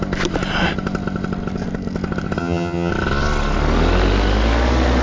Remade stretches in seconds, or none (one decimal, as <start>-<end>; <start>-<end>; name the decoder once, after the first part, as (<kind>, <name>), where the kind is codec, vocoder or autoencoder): 2.4-2.9 (vocoder, HiFi-GAN)